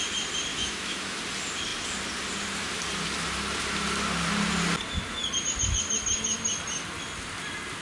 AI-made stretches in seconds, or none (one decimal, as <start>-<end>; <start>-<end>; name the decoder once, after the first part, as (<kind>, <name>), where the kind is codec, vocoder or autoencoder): 0.5-1.2 (autoencoder, DAC-VAE)